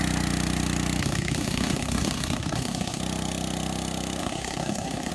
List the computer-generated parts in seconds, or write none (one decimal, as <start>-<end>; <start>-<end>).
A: 1.0-3.0; 4.2-5.1